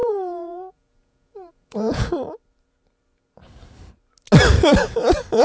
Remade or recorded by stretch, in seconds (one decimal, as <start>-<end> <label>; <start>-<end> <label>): 0.0-2.1 remade; 2.1-5.4 recorded